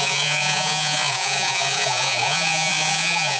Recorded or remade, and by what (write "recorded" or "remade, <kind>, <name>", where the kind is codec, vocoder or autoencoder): remade, vocoder, Vocos